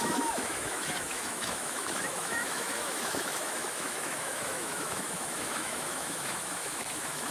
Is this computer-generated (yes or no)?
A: yes